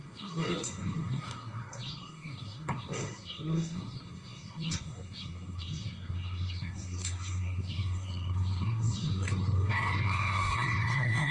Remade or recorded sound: remade